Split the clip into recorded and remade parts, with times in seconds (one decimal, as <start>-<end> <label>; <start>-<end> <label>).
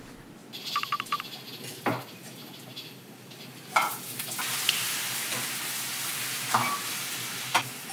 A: 0.0-7.9 recorded